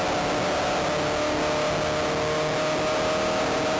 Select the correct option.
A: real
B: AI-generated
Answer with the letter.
A